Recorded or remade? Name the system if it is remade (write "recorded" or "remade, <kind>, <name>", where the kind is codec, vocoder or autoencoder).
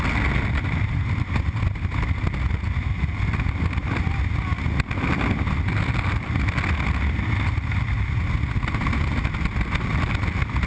recorded